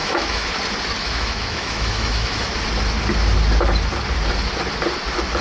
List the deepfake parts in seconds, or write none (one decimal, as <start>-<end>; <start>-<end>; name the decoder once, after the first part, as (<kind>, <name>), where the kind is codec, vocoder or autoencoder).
0.0-0.5 (autoencoder, DAC-VAE); 1.0-2.5